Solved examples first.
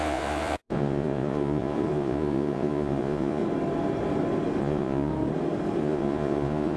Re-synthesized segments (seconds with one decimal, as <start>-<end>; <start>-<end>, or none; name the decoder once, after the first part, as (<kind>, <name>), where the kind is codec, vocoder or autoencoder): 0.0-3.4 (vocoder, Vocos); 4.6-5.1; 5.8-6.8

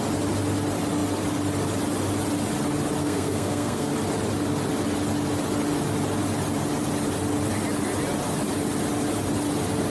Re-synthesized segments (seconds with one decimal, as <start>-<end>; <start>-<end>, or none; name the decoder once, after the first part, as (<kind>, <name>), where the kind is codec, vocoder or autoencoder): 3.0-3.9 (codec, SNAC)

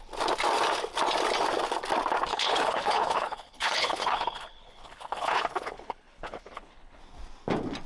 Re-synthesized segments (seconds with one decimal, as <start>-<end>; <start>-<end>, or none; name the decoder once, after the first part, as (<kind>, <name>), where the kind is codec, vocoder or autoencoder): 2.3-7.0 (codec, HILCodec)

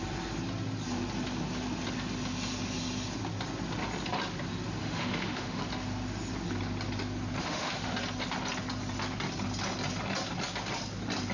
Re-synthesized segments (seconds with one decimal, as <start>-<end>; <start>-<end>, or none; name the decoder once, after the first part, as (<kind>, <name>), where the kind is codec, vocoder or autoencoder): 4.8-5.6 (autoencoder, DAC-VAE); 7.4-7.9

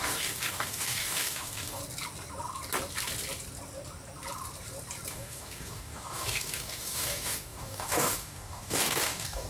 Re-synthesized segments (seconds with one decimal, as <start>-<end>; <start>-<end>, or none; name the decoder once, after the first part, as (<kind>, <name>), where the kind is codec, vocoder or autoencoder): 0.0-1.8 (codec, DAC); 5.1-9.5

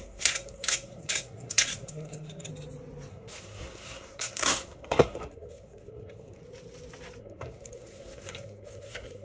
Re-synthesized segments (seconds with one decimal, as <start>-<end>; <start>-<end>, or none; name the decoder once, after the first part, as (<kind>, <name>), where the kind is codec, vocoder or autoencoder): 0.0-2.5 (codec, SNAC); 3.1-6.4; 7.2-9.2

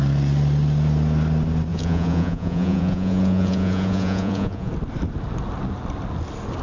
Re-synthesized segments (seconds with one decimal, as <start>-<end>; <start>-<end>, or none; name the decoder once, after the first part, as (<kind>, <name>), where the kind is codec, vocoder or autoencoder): 1.7-4.7 (vocoder, Vocos)

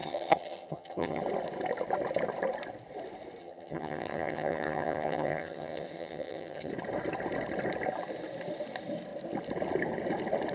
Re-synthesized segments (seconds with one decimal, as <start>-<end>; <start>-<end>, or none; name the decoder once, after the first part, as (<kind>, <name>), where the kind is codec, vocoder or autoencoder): 0.0-1.2 (vocoder, HiFi-GAN); 3.4-6.7